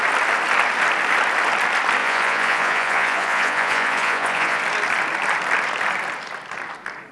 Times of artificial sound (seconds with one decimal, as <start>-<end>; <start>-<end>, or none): 2.0-4.6